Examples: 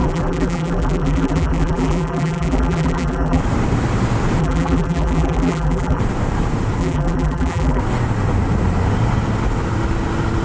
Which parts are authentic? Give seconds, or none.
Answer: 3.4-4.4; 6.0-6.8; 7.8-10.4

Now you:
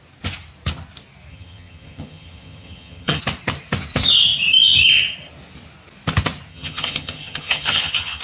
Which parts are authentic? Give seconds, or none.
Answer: 0.0-1.3; 3.2-6.5

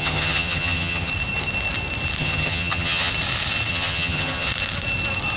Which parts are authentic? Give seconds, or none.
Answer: 1.1-2.2; 3.1-3.7; 4.5-5.4

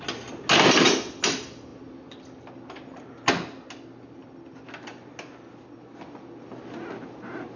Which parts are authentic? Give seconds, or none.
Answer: 0.0-7.6